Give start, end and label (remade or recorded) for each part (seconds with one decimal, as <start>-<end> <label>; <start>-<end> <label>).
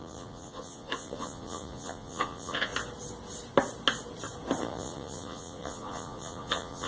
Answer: 0.0-2.7 remade; 2.7-4.6 recorded; 4.6-6.9 remade